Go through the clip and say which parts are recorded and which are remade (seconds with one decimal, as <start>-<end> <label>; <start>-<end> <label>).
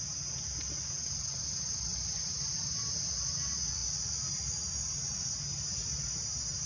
0.0-1.9 recorded; 1.9-2.6 remade; 2.6-6.7 recorded